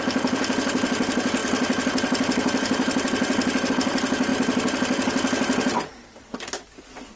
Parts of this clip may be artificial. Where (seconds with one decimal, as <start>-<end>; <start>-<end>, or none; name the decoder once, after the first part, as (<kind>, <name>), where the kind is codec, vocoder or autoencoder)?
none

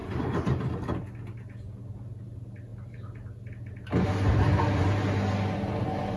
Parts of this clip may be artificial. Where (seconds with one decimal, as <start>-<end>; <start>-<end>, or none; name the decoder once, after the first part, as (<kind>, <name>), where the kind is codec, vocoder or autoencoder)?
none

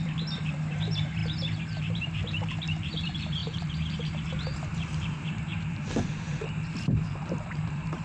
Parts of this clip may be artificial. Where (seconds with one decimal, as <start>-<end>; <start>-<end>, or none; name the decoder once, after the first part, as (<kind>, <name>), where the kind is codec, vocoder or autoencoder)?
0.0-8.0 (vocoder, BigVGAN v2)

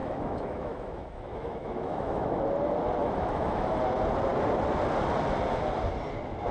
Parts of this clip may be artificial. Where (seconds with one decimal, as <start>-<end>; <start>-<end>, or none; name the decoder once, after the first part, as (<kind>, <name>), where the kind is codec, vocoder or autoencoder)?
0.0-2.4 (autoencoder, DAC-VAE); 3.0-3.8

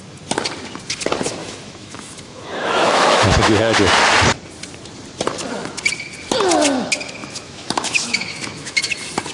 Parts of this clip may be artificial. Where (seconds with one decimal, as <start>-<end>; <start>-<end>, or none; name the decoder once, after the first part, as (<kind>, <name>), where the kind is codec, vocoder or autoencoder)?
1.4-3.9 (autoencoder, DAC-VAE); 7.2-8.9